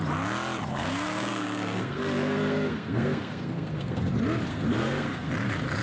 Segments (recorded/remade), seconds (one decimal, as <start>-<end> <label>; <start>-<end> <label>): 0.0-0.7 recorded; 0.7-4.1 remade; 4.1-4.5 recorded; 4.5-5.3 remade; 5.3-5.8 recorded